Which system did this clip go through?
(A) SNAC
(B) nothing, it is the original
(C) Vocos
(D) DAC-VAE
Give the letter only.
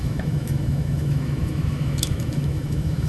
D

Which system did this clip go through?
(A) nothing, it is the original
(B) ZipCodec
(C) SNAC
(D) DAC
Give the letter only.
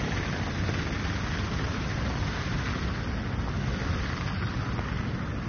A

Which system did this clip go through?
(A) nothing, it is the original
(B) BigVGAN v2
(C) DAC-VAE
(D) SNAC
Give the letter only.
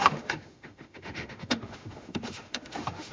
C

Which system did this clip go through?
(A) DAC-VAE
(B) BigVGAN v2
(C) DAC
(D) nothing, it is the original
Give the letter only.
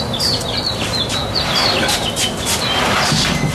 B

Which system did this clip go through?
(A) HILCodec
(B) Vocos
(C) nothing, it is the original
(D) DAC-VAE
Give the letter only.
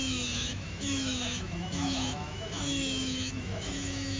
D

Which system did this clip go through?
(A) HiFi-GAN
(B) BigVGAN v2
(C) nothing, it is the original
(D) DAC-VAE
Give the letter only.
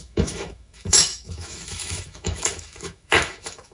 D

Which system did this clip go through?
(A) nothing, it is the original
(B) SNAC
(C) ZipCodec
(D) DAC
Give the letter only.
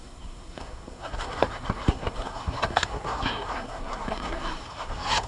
B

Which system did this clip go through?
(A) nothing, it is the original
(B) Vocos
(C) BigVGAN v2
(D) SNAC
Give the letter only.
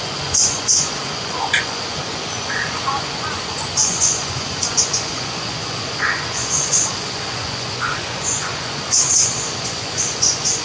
B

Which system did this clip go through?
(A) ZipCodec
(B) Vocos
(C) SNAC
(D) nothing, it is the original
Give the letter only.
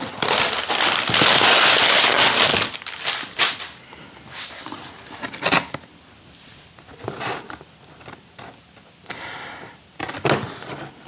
D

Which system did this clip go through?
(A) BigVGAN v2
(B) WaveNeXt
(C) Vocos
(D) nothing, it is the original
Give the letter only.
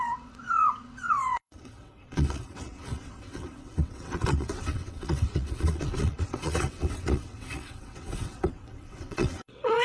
B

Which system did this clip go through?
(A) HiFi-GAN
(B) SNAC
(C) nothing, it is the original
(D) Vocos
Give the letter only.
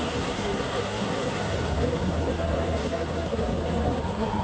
B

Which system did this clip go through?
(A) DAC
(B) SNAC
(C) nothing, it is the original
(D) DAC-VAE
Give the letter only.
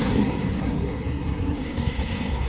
B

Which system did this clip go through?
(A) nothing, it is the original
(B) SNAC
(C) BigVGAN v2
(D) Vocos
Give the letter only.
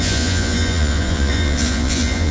D